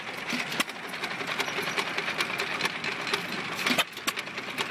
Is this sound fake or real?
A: real